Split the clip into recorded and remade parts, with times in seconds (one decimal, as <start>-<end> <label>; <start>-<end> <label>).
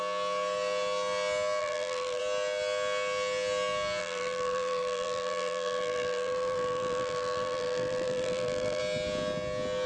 0.0-1.6 recorded; 1.6-2.2 remade; 2.2-4.0 recorded; 4.0-8.8 remade; 8.8-9.9 recorded